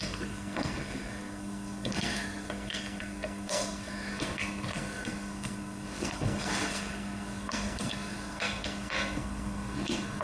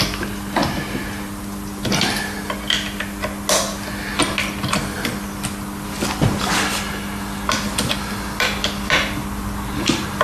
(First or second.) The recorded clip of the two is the second